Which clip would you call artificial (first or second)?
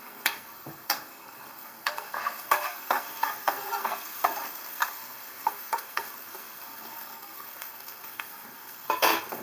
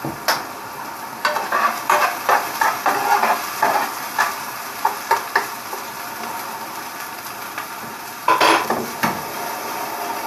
first